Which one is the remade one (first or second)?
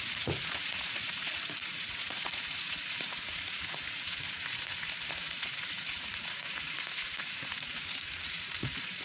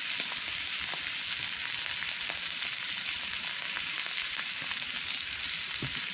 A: first